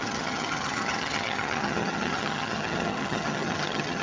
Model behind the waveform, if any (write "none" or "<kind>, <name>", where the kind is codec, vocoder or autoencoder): vocoder, HiFi-GAN